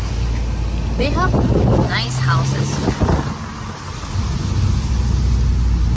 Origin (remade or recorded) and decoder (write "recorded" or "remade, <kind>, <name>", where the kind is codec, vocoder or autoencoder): recorded